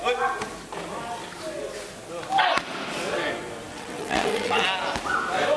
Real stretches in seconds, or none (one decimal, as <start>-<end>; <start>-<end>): 0.0-3.7; 4.6-5.6